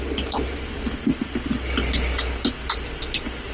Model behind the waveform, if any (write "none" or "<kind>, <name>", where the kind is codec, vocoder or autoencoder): none